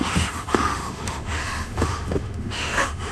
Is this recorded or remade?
remade